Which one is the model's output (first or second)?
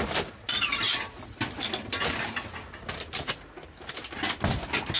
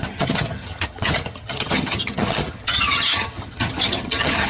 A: second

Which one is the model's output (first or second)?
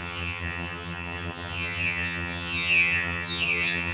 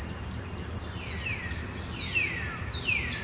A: first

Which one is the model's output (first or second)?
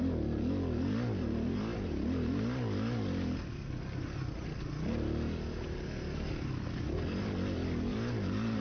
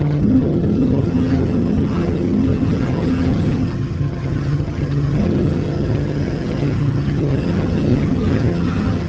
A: second